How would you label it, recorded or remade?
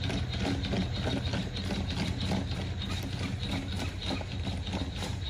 recorded